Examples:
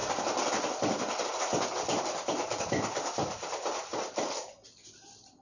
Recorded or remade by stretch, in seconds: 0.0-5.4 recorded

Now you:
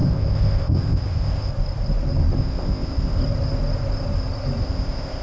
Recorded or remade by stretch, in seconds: 0.0-1.5 remade; 1.5-2.4 recorded; 2.4-3.2 remade; 3.2-4.6 recorded; 4.6-5.2 remade

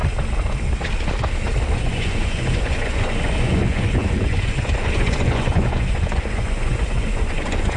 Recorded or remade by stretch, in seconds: 0.0-1.7 recorded; 1.7-7.8 remade

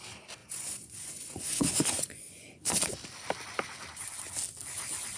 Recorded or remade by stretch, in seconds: 0.0-0.4 recorded; 0.4-2.9 remade; 2.9-5.2 recorded

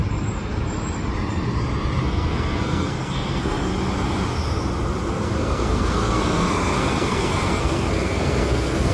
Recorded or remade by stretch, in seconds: 0.0-2.0 recorded; 2.0-3.7 remade; 3.7-5.1 recorded; 5.1-8.9 remade